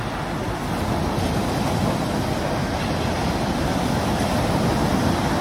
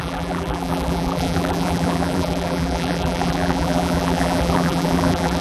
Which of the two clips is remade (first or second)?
second